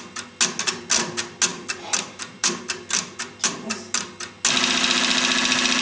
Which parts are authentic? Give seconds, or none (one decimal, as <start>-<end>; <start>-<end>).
0.0-1.5; 2.6-5.8